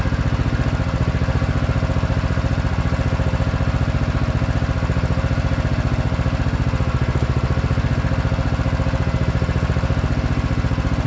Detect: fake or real real